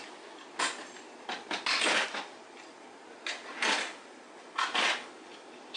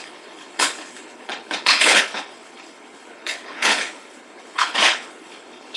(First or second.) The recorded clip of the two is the first